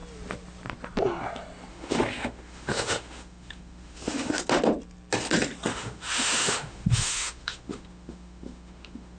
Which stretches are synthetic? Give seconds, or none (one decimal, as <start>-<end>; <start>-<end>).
1.7-4.4; 5.7-9.2

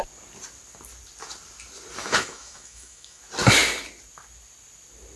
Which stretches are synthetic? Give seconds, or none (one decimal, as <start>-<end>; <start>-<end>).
2.0-3.2